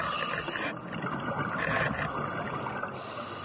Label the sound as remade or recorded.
recorded